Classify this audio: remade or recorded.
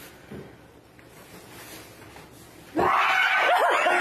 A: recorded